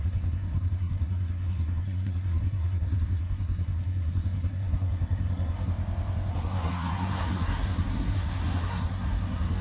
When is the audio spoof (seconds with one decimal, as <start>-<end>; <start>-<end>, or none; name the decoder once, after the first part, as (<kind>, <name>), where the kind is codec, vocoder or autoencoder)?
0.0-5.7 (codec, SNAC); 6.3-9.6